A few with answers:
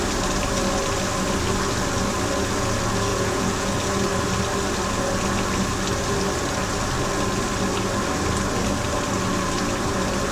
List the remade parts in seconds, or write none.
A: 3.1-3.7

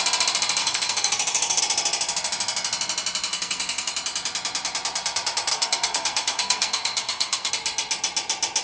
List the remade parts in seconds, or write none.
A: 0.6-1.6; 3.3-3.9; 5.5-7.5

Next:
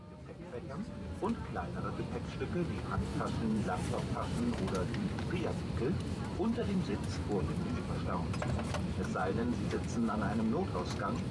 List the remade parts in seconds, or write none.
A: 3.1-5.6; 6.3-7.1; 9.2-9.9

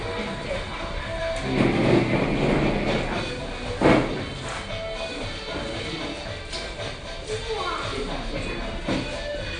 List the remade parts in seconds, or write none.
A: none

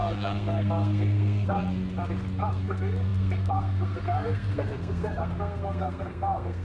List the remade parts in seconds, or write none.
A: 0.0-1.6; 2.5-6.6

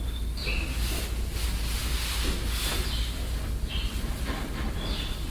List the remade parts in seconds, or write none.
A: none

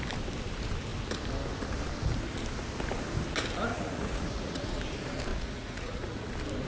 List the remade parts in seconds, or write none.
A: 3.7-4.8; 5.3-6.3

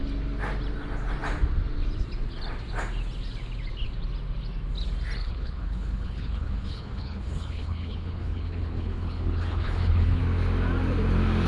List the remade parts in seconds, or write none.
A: 5.2-10.2